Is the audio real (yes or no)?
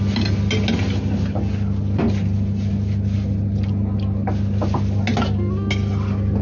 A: yes